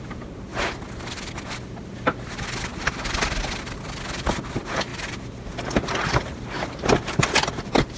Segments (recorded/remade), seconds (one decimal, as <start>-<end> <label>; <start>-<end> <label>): 0.0-8.0 recorded